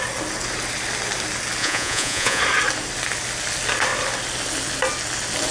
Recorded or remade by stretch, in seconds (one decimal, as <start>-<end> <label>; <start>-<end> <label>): 0.0-1.6 recorded; 1.6-2.4 remade; 2.4-5.5 recorded